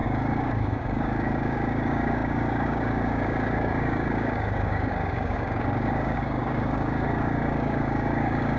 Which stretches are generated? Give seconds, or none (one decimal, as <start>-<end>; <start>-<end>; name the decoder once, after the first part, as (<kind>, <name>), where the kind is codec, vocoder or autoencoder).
0.0-8.6 (codec, DAC)